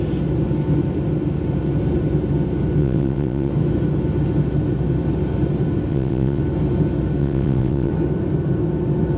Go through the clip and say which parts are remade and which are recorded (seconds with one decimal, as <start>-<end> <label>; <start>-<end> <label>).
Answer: 0.0-2.8 recorded; 2.8-3.5 remade; 3.5-5.9 recorded; 5.9-6.4 remade; 6.4-7.2 recorded; 7.2-7.9 remade; 7.9-9.2 recorded